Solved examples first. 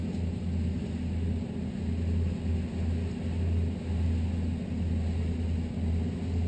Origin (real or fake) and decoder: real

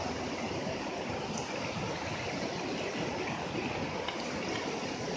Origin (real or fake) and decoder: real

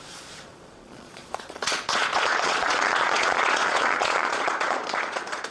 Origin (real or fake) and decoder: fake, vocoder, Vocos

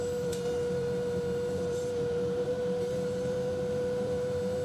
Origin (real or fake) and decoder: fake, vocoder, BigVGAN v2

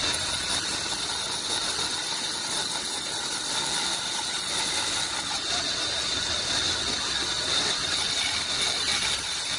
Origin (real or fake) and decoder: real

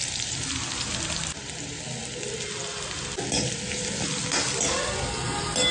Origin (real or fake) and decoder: real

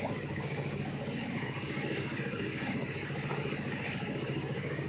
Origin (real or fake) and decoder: fake, codec, DAC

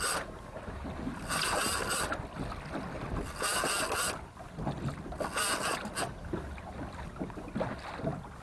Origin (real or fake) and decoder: real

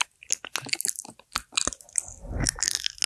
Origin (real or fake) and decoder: real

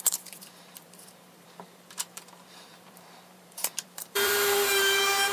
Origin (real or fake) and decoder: fake, vocoder, BigVGAN v2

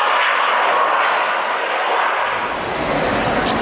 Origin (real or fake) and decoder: real